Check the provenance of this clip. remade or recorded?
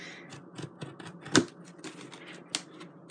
recorded